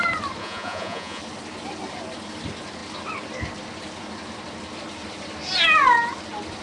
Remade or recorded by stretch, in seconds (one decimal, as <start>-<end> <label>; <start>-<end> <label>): 0.0-0.4 recorded; 0.4-1.2 remade; 1.2-6.6 recorded